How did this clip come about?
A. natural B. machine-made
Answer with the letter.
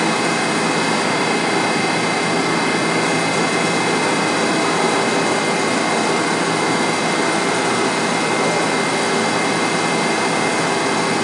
A